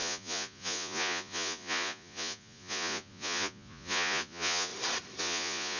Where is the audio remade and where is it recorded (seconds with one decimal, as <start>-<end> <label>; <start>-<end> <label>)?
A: 0.0-4.7 remade; 4.7-5.2 recorded; 5.2-5.8 remade

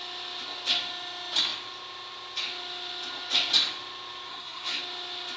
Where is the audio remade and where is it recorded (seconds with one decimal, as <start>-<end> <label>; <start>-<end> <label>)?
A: 0.0-4.3 recorded; 4.3-4.8 remade; 4.8-5.4 recorded

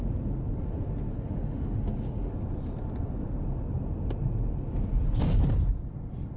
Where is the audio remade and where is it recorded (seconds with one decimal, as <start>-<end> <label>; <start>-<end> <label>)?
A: 0.0-1.1 recorded; 1.1-2.3 remade; 2.3-6.4 recorded